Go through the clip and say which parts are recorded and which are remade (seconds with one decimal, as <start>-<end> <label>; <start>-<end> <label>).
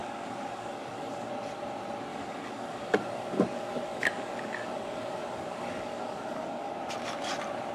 0.0-1.3 remade; 1.3-2.1 recorded; 2.1-6.7 remade; 6.7-7.7 recorded